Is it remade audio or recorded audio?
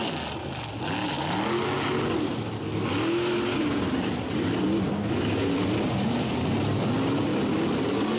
recorded